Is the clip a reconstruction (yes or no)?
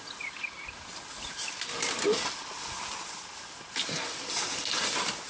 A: no